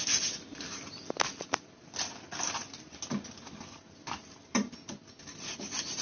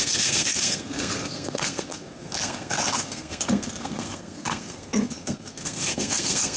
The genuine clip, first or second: first